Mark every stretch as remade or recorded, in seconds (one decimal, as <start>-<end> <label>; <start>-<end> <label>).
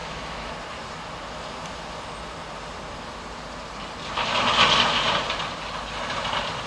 0.0-0.5 remade; 0.5-6.7 recorded